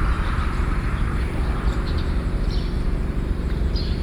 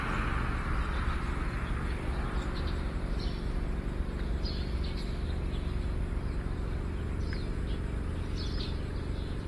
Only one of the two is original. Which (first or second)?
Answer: second